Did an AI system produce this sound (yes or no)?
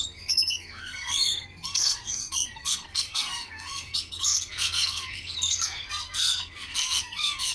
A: yes